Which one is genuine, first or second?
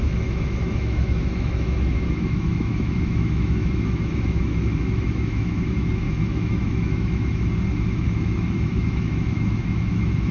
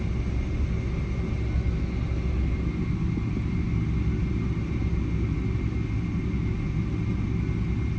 second